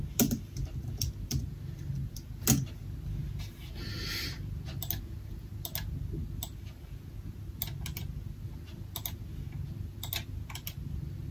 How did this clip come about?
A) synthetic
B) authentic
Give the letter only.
B